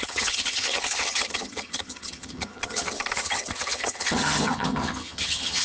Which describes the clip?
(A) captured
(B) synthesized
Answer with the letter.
B